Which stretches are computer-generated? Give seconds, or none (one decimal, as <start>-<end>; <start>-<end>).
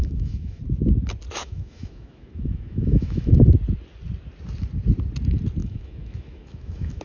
0.0-0.6; 1.4-3.3; 5.6-7.0